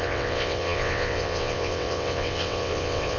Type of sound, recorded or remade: remade